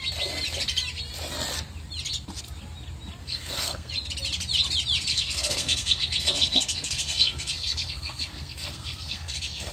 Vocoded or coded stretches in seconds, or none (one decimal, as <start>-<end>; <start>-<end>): 3.2-3.9; 5.1-9.7